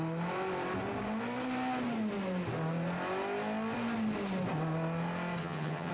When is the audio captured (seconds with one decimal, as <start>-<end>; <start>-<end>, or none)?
0.0-5.4